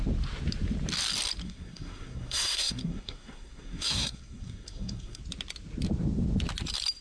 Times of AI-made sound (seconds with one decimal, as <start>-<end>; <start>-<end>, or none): 1.4-5.2